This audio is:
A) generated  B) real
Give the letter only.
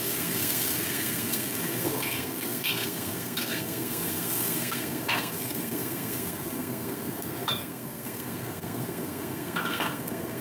A